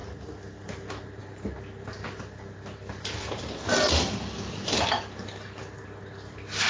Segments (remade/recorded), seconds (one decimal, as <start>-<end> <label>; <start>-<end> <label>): 0.0-6.7 recorded